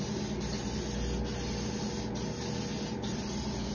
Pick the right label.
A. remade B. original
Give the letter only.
B